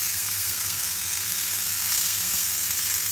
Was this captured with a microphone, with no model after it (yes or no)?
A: no